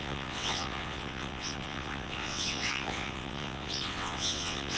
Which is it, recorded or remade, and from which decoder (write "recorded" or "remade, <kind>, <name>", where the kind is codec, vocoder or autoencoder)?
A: remade, vocoder, WaveNeXt